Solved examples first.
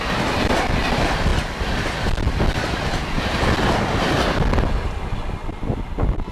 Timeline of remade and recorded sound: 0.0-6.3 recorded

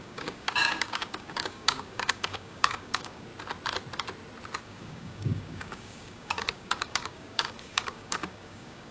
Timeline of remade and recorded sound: 0.0-3.3 remade; 3.3-4.6 recorded; 4.6-8.9 remade

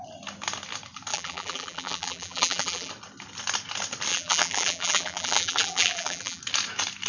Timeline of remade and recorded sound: 0.0-1.1 recorded; 1.1-2.9 remade; 2.9-4.1 recorded; 4.1-6.4 remade; 6.4-7.1 recorded